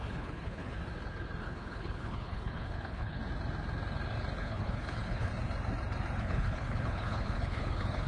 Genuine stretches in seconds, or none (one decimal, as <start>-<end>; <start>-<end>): 0.8-1.4; 3.2-4.4; 5.3-6.2